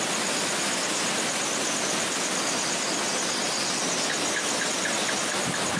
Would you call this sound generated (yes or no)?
no